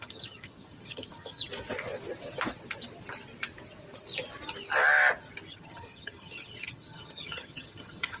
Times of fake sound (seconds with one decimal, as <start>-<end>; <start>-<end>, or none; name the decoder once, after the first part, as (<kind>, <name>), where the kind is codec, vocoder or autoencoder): 0.0-1.5 (vocoder, HiFi-GAN); 5.5-8.2